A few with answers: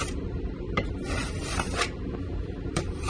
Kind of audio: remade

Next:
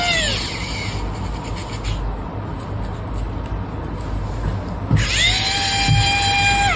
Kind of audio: recorded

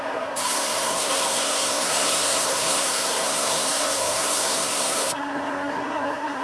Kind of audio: remade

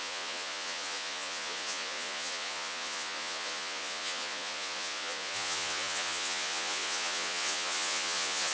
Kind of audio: remade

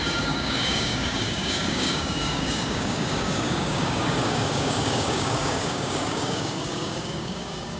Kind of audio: remade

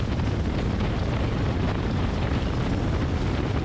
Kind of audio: recorded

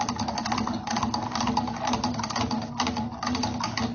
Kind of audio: recorded